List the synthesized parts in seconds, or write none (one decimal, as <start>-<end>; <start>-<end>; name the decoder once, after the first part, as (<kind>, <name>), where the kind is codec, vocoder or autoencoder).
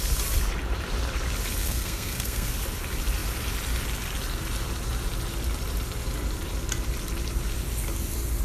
1.6-2.5 (codec, SNAC)